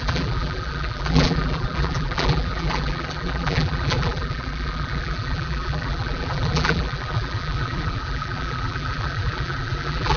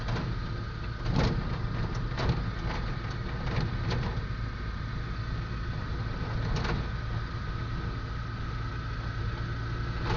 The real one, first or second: second